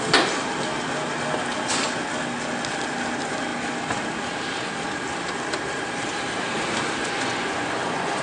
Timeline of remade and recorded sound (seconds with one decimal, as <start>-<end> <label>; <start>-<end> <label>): 0.0-7.0 recorded; 7.0-8.2 remade